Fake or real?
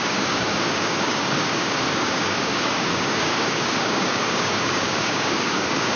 fake